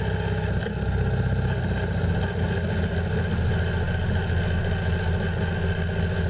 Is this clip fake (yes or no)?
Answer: no